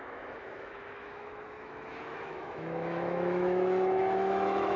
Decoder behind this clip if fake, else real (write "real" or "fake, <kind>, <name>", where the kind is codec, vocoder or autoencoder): fake, autoencoder, DAC-VAE